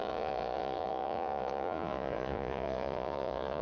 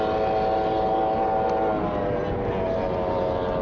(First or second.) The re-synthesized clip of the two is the first